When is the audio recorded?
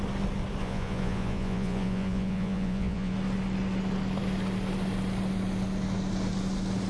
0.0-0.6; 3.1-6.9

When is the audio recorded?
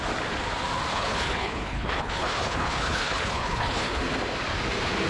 0.0-0.9; 4.0-5.1